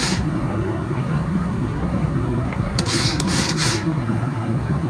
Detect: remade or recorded remade